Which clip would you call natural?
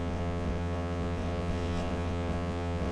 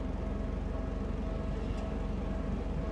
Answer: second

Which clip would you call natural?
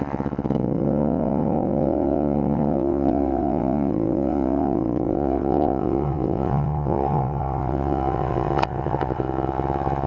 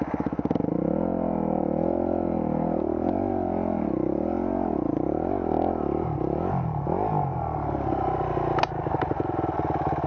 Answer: second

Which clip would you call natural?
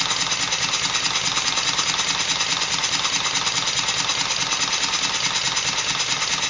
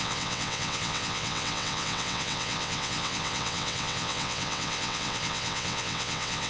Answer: first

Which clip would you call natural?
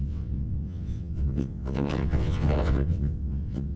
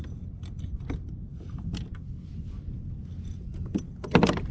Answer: second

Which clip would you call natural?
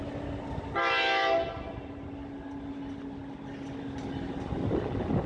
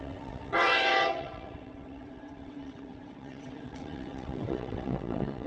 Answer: first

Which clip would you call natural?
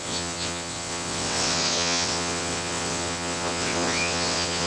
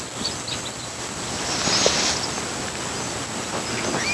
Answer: second